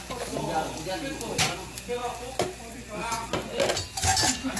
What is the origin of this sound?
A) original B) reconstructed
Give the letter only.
A